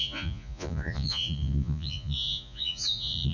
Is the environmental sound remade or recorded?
remade